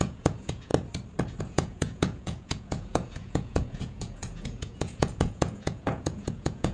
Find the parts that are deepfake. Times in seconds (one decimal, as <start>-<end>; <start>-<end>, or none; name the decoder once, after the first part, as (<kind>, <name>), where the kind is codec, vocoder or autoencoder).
0.0-0.7 (vocoder, Vocos); 1.4-6.7